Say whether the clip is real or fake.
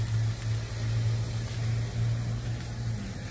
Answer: real